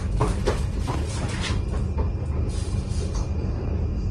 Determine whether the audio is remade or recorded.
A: recorded